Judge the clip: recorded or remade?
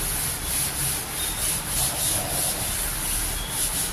recorded